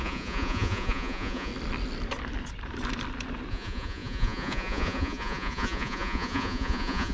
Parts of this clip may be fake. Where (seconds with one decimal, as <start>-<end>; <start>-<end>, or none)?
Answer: 0.0-1.5; 3.5-7.1